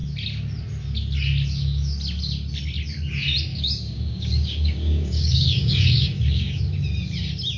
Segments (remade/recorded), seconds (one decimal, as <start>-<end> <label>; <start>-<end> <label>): 0.0-3.5 recorded; 3.5-6.6 remade; 6.6-7.6 recorded